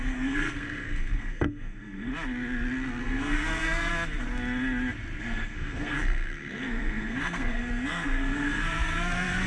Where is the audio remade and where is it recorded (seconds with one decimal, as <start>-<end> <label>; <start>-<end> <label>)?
0.0-2.1 remade; 2.1-3.0 recorded; 3.0-3.9 remade; 3.9-5.2 recorded; 5.2-9.5 remade